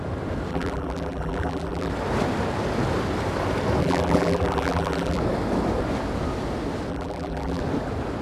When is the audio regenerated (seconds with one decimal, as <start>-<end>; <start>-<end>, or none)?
0.5-1.9; 3.8-5.2; 6.9-7.6